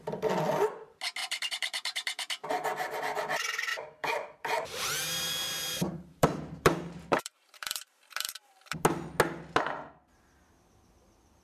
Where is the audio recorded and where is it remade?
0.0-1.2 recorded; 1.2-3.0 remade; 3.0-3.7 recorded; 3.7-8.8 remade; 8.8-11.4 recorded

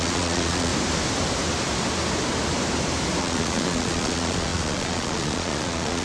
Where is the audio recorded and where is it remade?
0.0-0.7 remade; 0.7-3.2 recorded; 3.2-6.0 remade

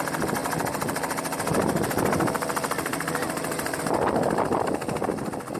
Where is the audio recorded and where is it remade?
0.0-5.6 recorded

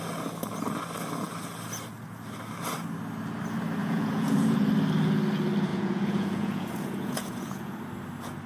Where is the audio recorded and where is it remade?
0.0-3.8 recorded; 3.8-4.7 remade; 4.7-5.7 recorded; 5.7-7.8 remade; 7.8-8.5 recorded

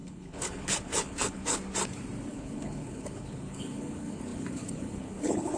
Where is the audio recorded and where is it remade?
0.0-1.6 remade; 1.6-2.3 recorded; 2.3-5.6 remade